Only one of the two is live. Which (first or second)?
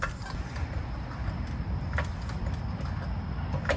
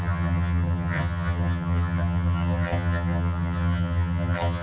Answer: first